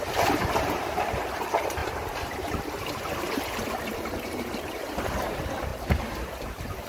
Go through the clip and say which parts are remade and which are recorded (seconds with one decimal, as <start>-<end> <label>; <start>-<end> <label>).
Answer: 0.0-5.7 remade; 5.7-6.3 recorded; 6.3-6.9 remade

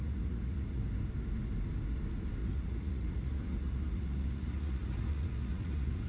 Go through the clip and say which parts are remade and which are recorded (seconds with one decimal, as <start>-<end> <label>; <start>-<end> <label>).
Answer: 0.0-0.8 remade; 0.8-2.4 recorded; 2.4-6.1 remade

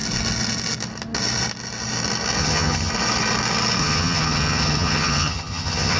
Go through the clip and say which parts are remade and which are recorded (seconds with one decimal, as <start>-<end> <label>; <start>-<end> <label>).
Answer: 0.0-2.4 recorded; 2.4-2.9 remade; 2.9-3.8 recorded; 3.8-6.0 remade

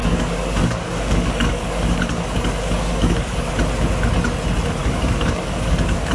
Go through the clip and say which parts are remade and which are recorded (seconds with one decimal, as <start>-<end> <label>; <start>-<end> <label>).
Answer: 0.0-3.5 remade; 3.5-4.8 recorded; 4.8-6.1 remade

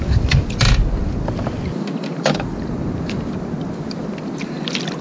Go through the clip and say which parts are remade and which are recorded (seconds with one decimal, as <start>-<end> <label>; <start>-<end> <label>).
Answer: 0.0-5.0 recorded

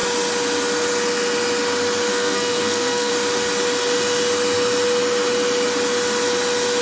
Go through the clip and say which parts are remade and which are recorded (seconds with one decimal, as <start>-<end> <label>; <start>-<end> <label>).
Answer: 0.0-2.1 recorded; 2.1-3.1 remade; 3.1-6.8 recorded

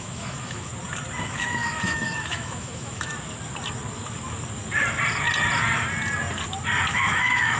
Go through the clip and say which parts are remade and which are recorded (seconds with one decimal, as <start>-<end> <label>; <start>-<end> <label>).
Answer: 0.0-0.7 remade; 0.7-1.2 recorded; 1.2-3.1 remade; 3.1-6.9 recorded; 6.9-7.6 remade